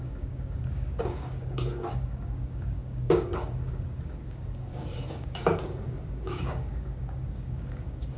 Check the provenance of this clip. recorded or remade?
remade